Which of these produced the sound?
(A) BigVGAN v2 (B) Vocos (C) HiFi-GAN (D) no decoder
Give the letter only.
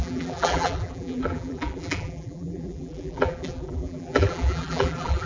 A